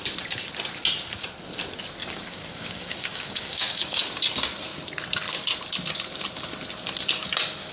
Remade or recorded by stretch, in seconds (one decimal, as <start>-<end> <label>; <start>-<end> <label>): 0.0-2.0 recorded; 2.0-4.1 remade; 4.1-7.7 recorded